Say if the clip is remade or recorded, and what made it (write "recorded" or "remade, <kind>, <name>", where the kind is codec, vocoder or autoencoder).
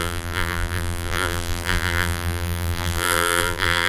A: remade, vocoder, BigVGAN v2